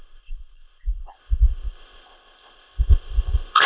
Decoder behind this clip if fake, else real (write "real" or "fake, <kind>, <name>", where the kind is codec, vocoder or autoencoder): fake, codec, ZipCodec